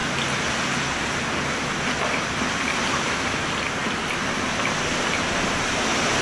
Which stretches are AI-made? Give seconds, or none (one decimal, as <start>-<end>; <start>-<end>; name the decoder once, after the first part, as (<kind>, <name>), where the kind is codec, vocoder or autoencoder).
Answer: none